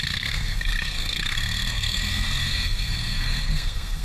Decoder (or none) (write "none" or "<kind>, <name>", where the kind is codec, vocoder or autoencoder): codec, SNAC